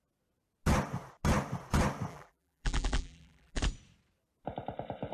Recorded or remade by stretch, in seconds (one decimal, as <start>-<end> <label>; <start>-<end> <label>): 0.0-2.1 recorded; 2.1-3.6 remade; 3.6-5.1 recorded